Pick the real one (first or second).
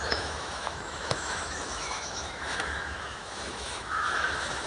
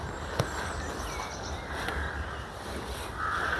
second